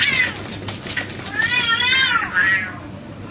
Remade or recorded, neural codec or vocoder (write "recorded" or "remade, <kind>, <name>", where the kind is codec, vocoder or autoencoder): recorded